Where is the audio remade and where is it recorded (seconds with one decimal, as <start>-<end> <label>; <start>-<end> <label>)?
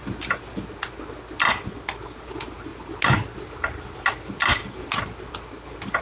0.0-6.0 recorded